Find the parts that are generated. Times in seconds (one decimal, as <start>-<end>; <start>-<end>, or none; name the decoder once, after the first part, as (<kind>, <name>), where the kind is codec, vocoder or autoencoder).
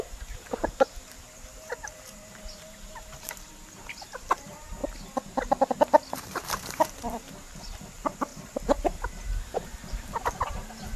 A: 0.0-4.8 (vocoder, BigVGAN v2); 6.1-11.0